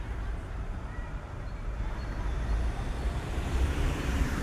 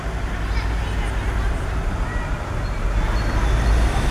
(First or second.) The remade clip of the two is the first